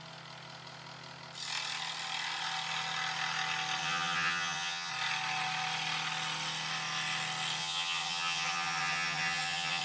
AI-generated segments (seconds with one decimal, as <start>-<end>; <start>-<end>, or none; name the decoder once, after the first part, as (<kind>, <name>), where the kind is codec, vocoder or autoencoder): 3.8-4.9 (vocoder, HiFi-GAN); 7.6-9.8